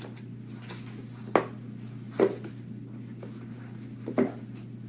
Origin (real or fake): real